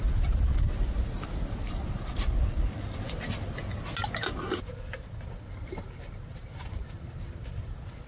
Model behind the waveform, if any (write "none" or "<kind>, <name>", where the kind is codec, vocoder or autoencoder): none